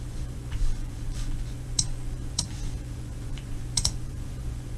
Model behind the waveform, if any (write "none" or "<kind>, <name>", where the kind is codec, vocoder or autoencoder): vocoder, Vocos